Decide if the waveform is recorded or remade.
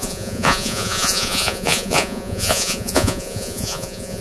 remade